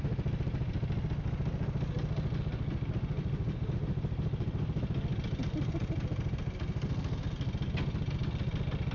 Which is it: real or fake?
real